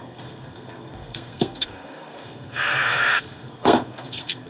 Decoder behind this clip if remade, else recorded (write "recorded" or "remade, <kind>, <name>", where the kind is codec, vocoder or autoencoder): remade, codec, SNAC